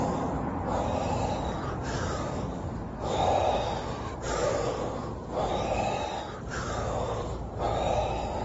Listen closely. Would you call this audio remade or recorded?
recorded